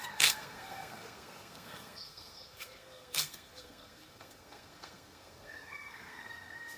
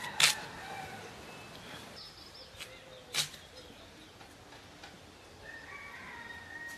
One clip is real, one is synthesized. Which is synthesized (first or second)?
first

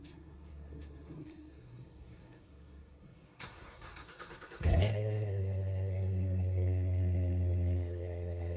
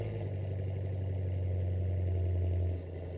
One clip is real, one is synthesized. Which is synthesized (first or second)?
first